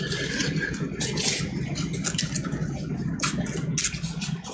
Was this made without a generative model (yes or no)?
yes